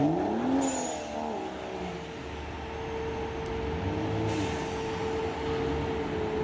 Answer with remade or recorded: recorded